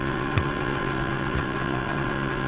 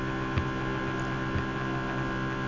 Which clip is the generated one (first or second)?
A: first